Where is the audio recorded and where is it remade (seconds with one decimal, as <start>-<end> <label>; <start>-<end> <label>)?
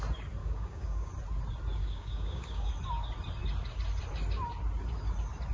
0.0-0.4 recorded; 0.4-1.1 remade; 1.1-1.8 recorded; 1.8-2.7 remade; 2.7-5.5 recorded